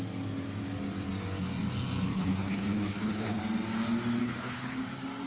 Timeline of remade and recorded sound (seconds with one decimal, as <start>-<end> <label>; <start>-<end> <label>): 0.0-2.1 recorded; 2.1-3.4 remade; 3.4-4.2 recorded; 4.2-4.8 remade; 4.8-5.3 recorded